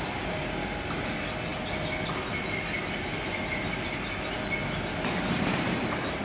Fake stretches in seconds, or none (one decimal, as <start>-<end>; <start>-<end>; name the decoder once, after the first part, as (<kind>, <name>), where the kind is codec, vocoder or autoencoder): 4.6-6.2 (vocoder, BigVGAN v2)